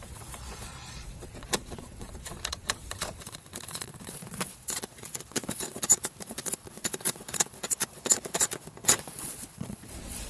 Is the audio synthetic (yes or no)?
yes